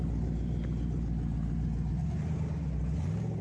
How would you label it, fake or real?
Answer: real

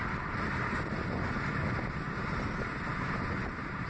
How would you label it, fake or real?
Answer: real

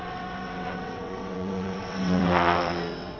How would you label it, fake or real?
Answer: fake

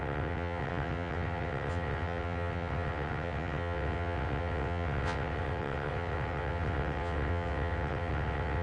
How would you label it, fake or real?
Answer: fake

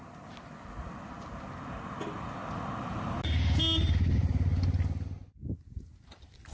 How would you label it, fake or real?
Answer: real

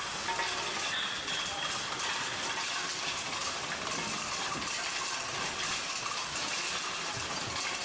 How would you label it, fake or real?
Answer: real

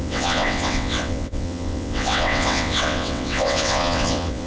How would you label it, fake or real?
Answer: fake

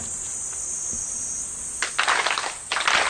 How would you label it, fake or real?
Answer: real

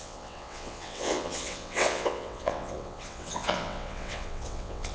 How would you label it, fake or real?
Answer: fake